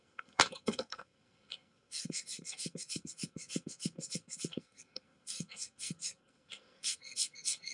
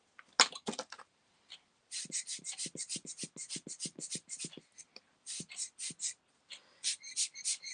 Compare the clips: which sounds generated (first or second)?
first